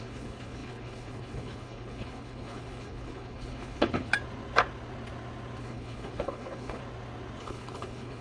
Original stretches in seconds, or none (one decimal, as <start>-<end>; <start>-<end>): 4.1-5.6; 6.8-7.4